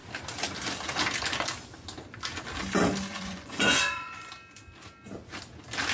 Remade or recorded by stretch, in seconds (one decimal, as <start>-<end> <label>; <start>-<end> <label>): 0.0-3.1 recorded; 3.1-4.3 remade; 4.3-5.9 recorded